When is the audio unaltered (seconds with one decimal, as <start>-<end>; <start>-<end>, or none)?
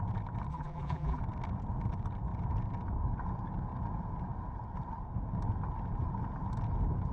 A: 0.0-0.5; 1.2-7.1